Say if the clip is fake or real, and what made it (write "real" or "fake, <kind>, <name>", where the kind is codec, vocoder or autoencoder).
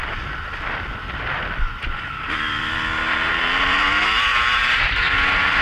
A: fake, vocoder, BigVGAN v2